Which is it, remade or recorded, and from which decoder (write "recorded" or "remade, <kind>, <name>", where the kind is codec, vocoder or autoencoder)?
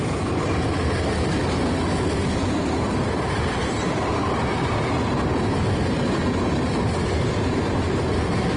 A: recorded